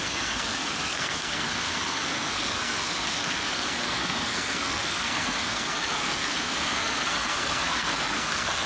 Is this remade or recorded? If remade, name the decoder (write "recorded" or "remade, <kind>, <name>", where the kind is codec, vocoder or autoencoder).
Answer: remade, codec, SNAC